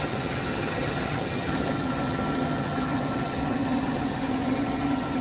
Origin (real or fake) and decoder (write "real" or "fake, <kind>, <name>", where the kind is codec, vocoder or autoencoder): fake, vocoder, HiFi-GAN